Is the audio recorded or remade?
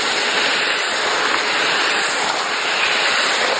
recorded